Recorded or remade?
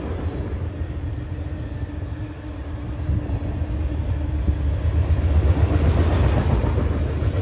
recorded